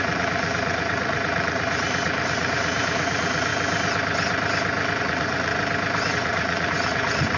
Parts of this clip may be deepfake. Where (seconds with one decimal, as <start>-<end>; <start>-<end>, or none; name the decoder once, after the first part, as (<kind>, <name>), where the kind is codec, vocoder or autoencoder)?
0.0-3.5 (vocoder, Vocos); 5.0-5.5; 6.1-7.4